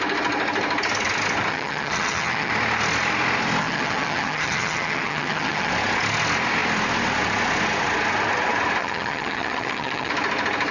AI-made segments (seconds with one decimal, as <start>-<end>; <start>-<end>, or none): 1.5-2.5; 3.6-5.7; 8.8-10.1